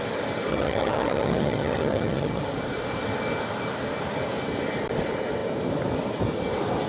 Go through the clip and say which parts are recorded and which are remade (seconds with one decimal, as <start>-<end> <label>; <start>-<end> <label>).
0.0-0.5 recorded; 0.5-2.4 remade; 2.4-6.9 recorded